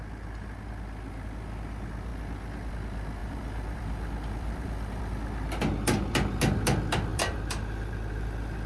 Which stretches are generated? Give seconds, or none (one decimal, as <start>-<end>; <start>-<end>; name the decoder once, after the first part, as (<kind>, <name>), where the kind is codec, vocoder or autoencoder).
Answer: 3.2-5.0 (vocoder, BigVGAN v2); 7.1-8.7